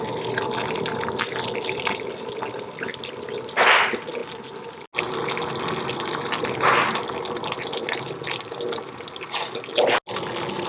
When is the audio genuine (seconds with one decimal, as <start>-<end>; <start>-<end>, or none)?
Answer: 0.0-10.7